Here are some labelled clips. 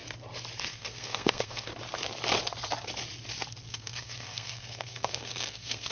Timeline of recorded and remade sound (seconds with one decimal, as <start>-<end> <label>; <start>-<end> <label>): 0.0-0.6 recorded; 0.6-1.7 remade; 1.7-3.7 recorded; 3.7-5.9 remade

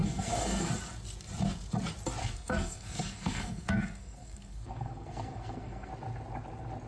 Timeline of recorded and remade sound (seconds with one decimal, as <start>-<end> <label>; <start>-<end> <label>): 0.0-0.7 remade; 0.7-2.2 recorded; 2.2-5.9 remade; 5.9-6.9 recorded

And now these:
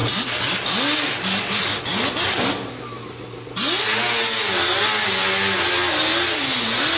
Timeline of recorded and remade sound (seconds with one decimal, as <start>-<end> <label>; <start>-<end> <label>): 0.0-7.0 recorded